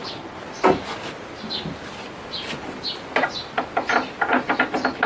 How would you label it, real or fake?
real